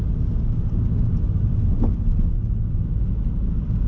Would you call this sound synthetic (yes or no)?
no